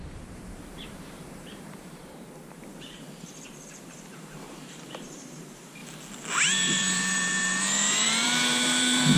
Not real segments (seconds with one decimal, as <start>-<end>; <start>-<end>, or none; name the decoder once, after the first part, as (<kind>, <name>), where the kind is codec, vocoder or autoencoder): 0.0-5.8 (vocoder, BigVGAN v2); 6.4-9.2

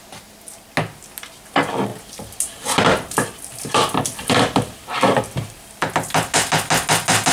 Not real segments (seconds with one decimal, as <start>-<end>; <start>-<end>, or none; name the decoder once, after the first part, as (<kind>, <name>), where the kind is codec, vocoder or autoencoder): none